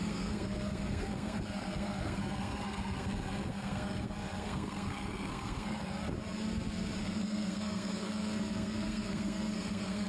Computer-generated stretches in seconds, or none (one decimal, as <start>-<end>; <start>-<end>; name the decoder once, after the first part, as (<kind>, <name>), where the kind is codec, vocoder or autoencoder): 0.0-6.0 (codec, SNAC); 7.0-10.1